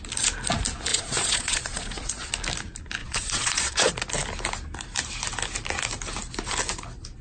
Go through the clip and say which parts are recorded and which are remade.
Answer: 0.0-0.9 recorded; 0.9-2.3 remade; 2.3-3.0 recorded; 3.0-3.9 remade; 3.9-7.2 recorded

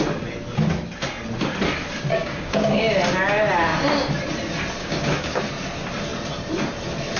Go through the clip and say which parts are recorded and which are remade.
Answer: 0.0-2.1 recorded; 2.1-2.8 remade; 2.8-4.8 recorded; 4.8-5.4 remade; 5.4-7.2 recorded

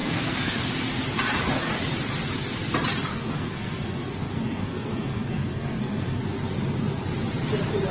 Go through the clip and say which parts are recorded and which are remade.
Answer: 0.0-0.7 remade; 0.7-3.1 recorded; 3.1-6.2 remade; 6.2-7.9 recorded

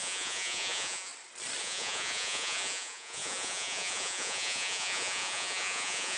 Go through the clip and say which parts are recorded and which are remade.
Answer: 0.0-1.1 remade; 1.1-1.6 recorded; 1.6-6.2 remade

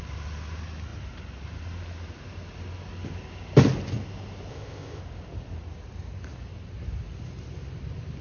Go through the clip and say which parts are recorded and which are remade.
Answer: 0.0-4.5 recorded; 4.5-5.0 remade; 5.0-8.2 recorded

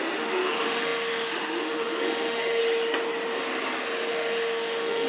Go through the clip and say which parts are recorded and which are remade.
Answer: 0.0-2.6 remade; 2.6-4.1 recorded; 4.1-5.1 remade